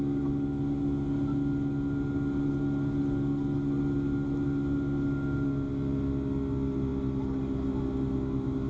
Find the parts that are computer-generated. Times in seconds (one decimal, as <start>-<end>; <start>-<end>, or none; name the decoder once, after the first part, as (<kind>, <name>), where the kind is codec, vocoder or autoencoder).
none